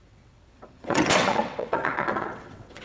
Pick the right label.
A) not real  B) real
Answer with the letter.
A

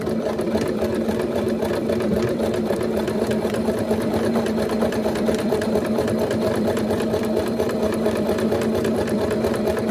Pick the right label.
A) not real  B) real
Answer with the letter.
A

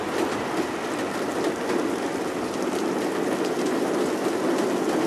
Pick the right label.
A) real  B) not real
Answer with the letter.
A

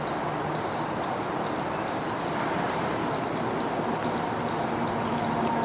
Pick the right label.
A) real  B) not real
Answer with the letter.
B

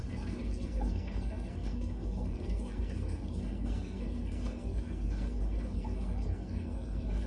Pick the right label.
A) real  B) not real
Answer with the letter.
B